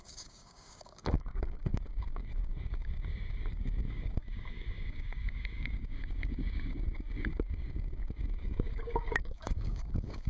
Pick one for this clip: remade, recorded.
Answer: remade